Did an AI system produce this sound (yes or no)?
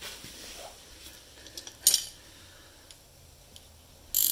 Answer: no